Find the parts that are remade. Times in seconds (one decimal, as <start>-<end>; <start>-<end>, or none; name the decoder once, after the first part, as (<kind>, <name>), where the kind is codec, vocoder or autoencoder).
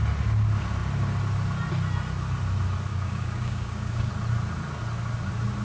2.9-4.1 (codec, DAC)